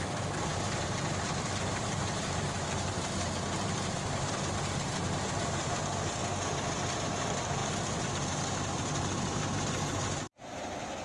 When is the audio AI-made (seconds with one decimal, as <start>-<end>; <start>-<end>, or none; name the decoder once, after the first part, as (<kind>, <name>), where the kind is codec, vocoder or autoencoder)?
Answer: 0.0-6.2 (vocoder, BigVGAN v2); 6.7-11.0